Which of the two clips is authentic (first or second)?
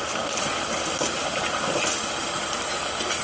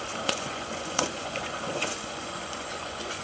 first